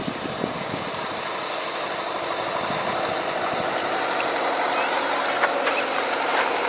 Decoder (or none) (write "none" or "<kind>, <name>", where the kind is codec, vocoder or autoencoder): vocoder, BigVGAN v2